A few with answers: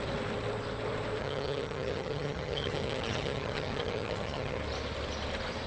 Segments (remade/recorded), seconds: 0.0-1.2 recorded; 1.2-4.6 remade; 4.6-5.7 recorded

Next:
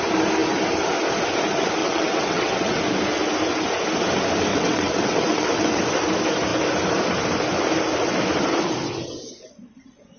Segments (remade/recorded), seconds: 0.0-1.8 recorded; 1.8-2.8 remade; 2.8-4.5 recorded; 4.5-5.8 remade; 5.8-10.2 recorded

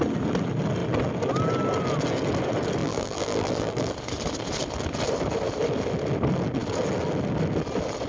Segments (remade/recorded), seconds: 0.0-2.8 recorded; 2.8-3.9 remade; 3.9-8.1 recorded

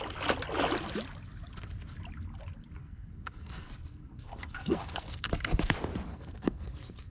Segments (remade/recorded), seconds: 0.0-2.8 recorded; 2.8-5.3 remade; 5.3-6.1 recorded; 6.1-7.1 remade

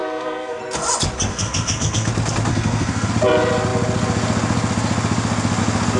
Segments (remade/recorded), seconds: 0.0-0.6 remade; 0.6-1.3 recorded; 1.3-2.1 remade; 2.1-2.5 recorded; 2.5-3.1 remade; 3.1-6.0 recorded

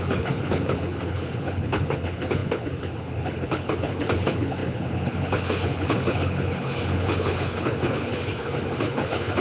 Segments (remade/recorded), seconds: 0.0-9.4 remade

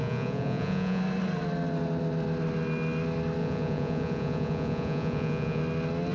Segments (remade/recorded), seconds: 0.0-1.0 remade; 1.0-3.4 recorded; 3.4-5.6 remade; 5.6-6.1 recorded